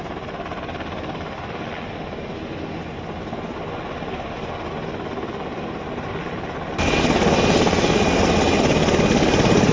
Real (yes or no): yes